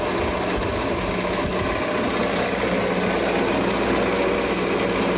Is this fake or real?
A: real